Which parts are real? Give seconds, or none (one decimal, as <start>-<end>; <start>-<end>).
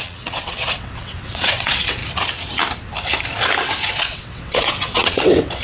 2.0-3.8